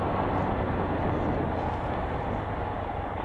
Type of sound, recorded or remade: recorded